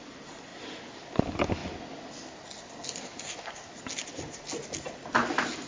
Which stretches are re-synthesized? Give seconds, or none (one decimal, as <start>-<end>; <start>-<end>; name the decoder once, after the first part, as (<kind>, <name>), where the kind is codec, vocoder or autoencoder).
none